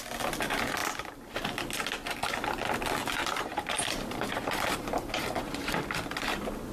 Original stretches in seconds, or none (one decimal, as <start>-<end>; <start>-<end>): 0.0-3.2; 5.7-6.7